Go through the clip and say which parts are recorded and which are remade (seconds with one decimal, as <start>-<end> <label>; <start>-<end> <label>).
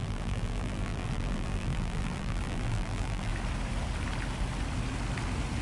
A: 0.0-3.3 remade; 3.3-5.6 recorded